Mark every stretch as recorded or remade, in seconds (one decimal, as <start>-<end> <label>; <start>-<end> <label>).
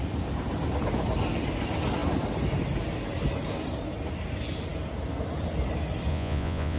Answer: 0.0-6.1 recorded; 6.1-6.8 remade